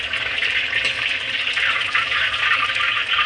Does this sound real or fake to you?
real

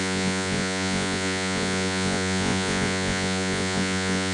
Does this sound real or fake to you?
fake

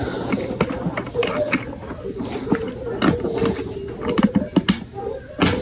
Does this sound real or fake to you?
real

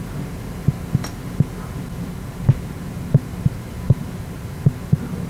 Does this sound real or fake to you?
real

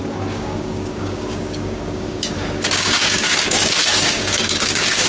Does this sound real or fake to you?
fake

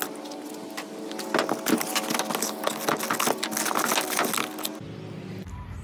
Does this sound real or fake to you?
real